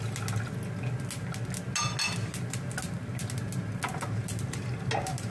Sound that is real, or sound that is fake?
real